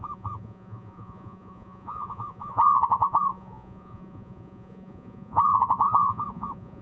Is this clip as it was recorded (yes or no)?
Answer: no